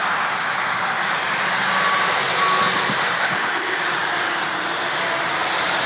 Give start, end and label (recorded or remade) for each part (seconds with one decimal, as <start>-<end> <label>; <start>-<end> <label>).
0.0-3.2 recorded; 3.2-3.8 remade; 3.8-5.9 recorded